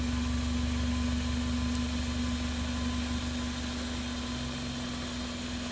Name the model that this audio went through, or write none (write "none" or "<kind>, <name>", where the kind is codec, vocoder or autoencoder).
none